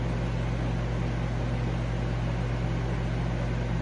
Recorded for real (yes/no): yes